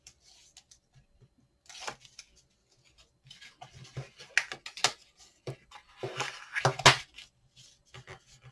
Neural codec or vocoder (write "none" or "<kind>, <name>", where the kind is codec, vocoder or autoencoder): none